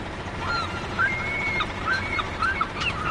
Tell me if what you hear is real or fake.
fake